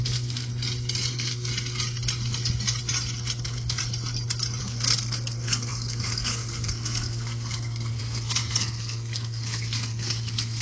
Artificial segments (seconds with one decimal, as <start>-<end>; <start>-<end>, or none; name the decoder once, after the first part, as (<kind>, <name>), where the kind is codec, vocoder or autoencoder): 0.0-0.5 (codec, SNAC); 1.1-1.5; 3.4-3.8; 4.6-10.6